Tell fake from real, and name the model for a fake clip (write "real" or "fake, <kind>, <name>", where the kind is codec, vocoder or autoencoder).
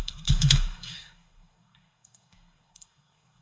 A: fake, codec, SNAC